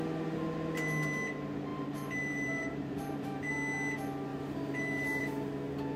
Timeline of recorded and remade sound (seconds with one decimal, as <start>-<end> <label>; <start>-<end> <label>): 0.0-1.7 recorded; 1.7-3.5 remade; 3.5-4.3 recorded; 4.3-5.2 remade; 5.2-6.0 recorded